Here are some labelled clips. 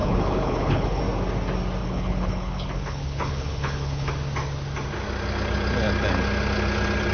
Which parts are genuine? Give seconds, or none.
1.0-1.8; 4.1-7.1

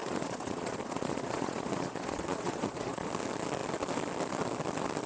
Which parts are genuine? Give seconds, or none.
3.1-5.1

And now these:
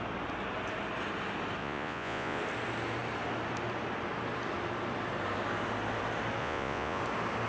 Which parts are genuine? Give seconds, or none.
0.0-1.6; 2.4-6.4; 7.0-7.5